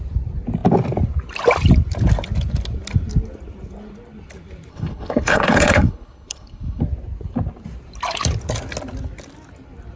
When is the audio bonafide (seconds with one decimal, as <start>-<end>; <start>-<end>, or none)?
0.0-4.7; 6.8-10.0